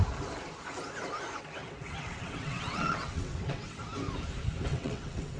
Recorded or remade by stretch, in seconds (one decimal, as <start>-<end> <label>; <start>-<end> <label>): 0.0-1.6 recorded; 1.6-3.8 remade; 3.8-4.7 recorded; 4.7-5.4 remade

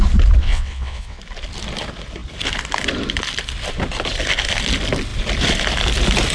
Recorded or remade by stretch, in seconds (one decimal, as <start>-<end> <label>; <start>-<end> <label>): 0.0-0.4 recorded; 0.4-1.2 remade; 1.2-6.3 recorded

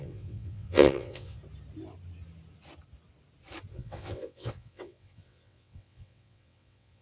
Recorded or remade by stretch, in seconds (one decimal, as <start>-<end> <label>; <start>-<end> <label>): 0.0-1.4 remade; 1.4-3.7 recorded; 3.7-7.0 remade

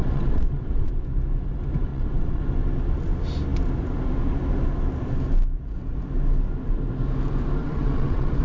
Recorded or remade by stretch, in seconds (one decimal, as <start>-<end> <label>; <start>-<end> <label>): 0.0-0.9 remade; 0.9-1.9 recorded; 1.9-2.4 remade; 2.4-7.6 recorded; 7.6-8.4 remade

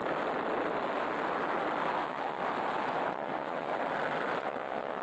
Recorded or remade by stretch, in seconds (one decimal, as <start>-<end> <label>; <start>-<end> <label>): 0.0-2.0 recorded; 2.0-2.4 remade; 2.4-3.1 recorded; 3.1-3.7 remade; 3.7-4.4 recorded; 4.4-5.0 remade

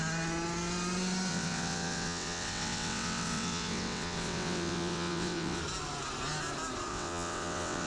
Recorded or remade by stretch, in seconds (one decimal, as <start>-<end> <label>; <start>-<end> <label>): 0.0-1.3 recorded; 1.3-5.6 remade; 5.6-6.9 recorded; 6.9-7.9 remade